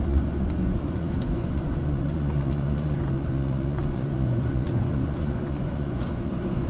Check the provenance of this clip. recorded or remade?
remade